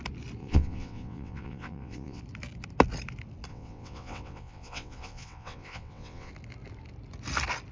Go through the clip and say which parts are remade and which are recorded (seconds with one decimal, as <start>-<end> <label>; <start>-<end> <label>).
0.0-0.4 recorded; 0.4-2.2 remade; 2.2-3.5 recorded; 3.5-6.3 remade; 6.3-7.7 recorded